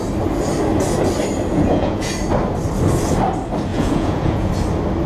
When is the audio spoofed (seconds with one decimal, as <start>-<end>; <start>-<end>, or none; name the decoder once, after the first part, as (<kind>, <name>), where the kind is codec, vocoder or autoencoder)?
1.5-2.1 (vocoder, Vocos); 3.7-4.5